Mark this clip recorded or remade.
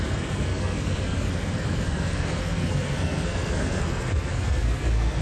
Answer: remade